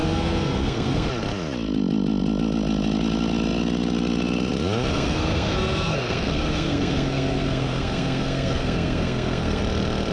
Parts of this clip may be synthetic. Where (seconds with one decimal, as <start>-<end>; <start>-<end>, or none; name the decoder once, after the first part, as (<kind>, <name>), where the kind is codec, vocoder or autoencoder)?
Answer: 0.0-1.1 (codec, SNAC); 4.9-9.6